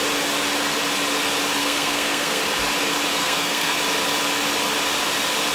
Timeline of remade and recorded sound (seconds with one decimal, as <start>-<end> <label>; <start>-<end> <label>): 0.0-1.6 recorded; 1.6-2.4 remade; 2.4-3.1 recorded; 3.1-3.8 remade; 3.8-5.5 recorded